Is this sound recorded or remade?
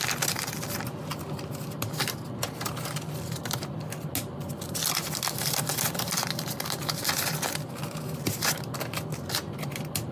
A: recorded